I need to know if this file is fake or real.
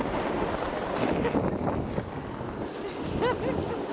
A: real